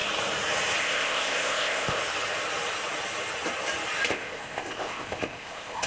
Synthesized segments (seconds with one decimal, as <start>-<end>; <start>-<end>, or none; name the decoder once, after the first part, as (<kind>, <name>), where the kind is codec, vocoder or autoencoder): 0.8-2.0 (codec, ZipCodec); 4.1-5.9